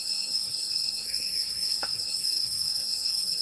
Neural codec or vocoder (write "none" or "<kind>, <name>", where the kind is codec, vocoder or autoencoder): codec, SNAC